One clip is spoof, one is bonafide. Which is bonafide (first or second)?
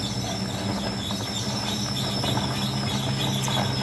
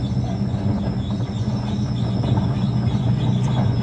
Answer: first